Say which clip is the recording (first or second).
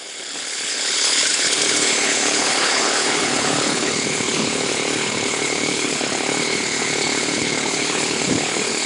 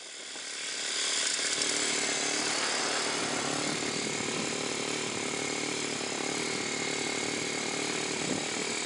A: second